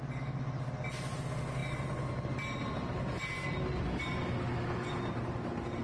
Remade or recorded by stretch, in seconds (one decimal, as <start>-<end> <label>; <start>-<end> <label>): 0.0-5.8 recorded